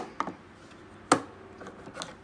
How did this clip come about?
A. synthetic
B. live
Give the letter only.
B